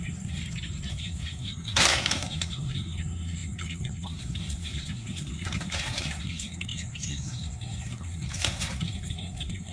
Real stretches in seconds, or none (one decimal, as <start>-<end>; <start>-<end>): 0.4-0.9